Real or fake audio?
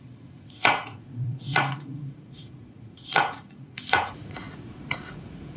fake